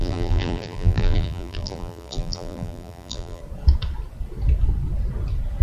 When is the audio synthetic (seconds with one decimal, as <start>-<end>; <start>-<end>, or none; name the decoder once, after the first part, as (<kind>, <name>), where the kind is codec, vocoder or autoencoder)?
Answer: 0.0-3.4 (vocoder, BigVGAN v2)